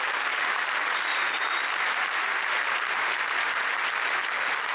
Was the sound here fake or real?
fake